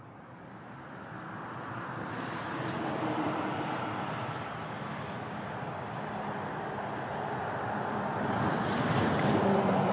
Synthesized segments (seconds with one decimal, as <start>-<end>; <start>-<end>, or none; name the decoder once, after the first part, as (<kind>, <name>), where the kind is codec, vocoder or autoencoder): 0.0-7.4 (vocoder, BigVGAN v2); 7.9-9.9